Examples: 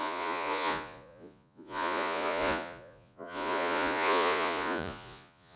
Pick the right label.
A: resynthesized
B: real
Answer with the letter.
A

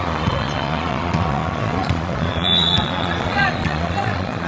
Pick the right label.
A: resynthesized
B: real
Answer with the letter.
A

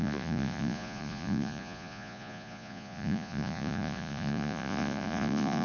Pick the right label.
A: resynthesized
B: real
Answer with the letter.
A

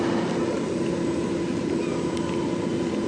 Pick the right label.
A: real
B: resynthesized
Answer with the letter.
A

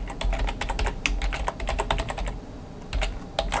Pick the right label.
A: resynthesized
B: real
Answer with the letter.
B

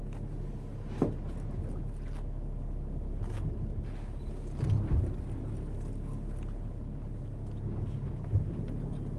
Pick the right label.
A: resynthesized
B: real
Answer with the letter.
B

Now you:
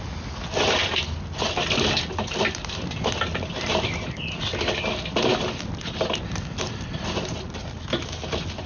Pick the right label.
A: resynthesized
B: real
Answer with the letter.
B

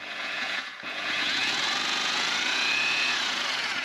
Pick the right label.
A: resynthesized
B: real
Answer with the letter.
A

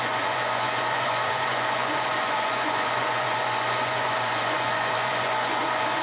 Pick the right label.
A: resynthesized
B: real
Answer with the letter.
A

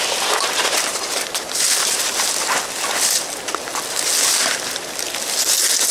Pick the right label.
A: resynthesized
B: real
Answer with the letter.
B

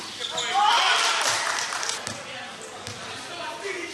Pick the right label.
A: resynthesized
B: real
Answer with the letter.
B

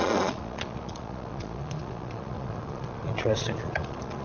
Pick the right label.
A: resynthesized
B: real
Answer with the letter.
A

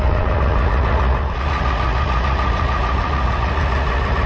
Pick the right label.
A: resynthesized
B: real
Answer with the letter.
A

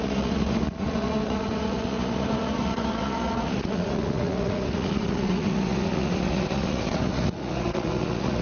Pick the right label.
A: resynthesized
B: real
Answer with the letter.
A